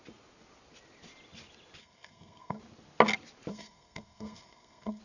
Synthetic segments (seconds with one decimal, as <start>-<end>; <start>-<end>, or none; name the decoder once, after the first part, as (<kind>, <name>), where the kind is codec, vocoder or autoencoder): 1.8-2.6 (codec, SNAC); 3.5-5.0